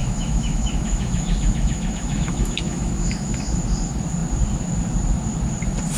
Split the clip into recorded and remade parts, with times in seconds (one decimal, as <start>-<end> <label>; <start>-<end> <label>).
0.0-3.6 remade; 3.6-6.0 recorded